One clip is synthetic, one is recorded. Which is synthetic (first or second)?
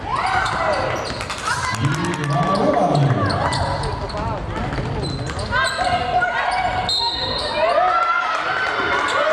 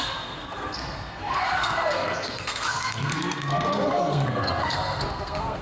second